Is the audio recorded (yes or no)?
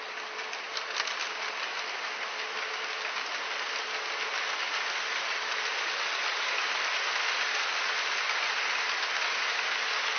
yes